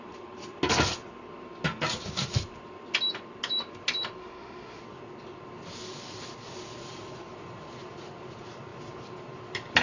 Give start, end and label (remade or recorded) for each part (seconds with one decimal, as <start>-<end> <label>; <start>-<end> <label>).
0.0-4.2 recorded; 4.2-4.8 remade; 4.8-9.8 recorded